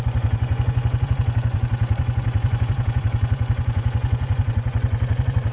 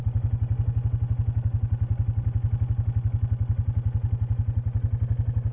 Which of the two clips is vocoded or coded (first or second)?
first